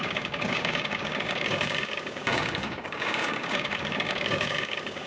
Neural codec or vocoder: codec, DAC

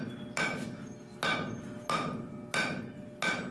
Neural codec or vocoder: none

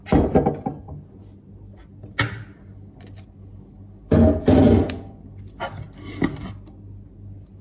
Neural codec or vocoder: none